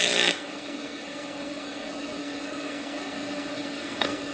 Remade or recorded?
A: remade